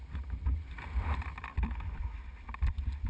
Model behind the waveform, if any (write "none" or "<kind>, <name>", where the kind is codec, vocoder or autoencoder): none